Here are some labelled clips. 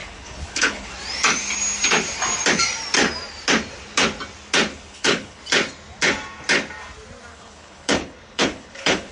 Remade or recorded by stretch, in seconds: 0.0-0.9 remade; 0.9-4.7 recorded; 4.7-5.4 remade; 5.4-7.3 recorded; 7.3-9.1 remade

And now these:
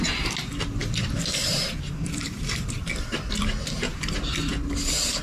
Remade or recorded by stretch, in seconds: 0.0-0.8 recorded; 0.8-3.1 remade; 3.1-5.2 recorded

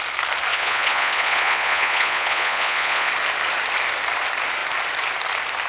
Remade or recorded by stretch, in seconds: 0.0-0.5 recorded; 0.5-3.1 remade; 3.1-5.7 recorded